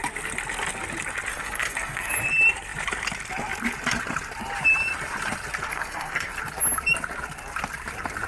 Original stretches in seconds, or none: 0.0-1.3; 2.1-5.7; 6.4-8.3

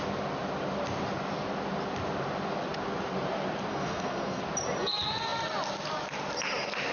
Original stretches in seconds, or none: 0.0-3.7; 4.4-6.9